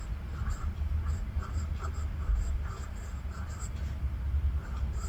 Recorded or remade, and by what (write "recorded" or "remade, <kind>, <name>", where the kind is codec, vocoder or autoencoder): recorded